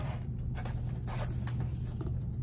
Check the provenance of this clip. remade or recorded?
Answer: recorded